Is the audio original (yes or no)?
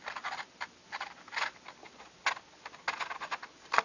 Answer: yes